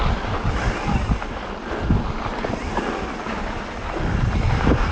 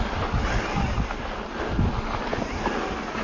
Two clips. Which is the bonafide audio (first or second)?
second